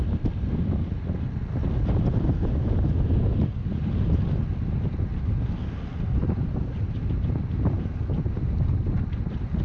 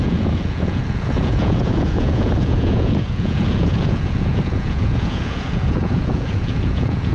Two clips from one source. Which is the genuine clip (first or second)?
first